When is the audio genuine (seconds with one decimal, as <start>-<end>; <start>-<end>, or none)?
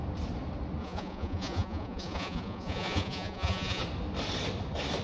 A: 0.0-0.8; 3.8-5.0